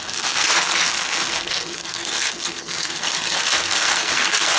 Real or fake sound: fake